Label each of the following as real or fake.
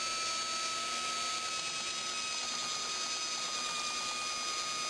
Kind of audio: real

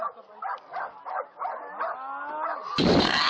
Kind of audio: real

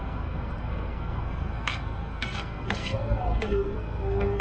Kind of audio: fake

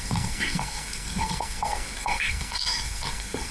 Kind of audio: fake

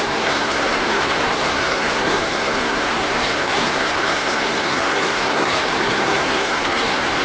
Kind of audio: fake